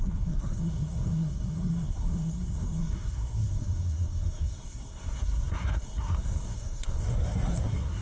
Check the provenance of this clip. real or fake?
fake